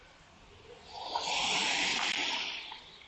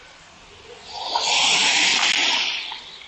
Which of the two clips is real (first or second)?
second